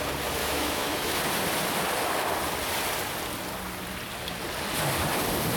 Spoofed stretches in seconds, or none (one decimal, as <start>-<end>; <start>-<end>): 0.4-1.2